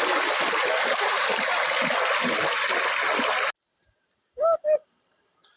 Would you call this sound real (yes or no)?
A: yes